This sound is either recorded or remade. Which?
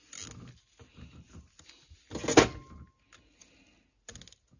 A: recorded